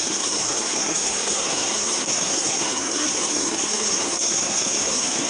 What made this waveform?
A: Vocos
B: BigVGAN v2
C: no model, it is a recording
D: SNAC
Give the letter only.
D